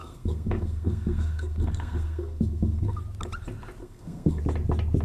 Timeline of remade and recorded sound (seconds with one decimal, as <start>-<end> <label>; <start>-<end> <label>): 0.0-3.0 remade; 3.0-3.8 recorded; 3.8-4.4 remade; 4.4-5.0 recorded